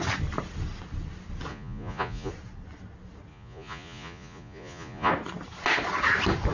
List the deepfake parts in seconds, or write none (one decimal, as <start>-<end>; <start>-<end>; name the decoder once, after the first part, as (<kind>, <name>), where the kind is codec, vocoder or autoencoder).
1.5-2.3 (vocoder, Vocos); 3.3-5.1